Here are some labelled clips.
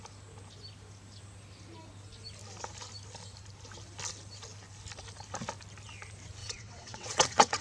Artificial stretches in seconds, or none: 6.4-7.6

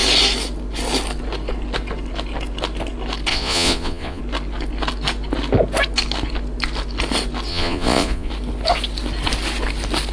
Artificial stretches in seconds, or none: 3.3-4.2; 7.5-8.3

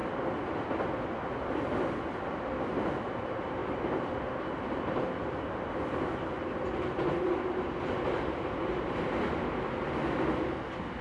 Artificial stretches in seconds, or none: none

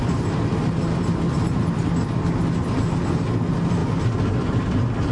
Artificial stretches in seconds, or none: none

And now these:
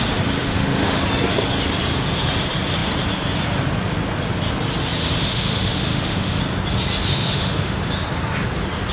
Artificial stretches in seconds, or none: 0.4-1.0; 5.2-6.4; 7.1-7.8